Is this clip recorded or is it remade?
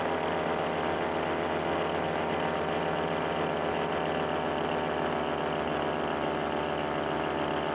recorded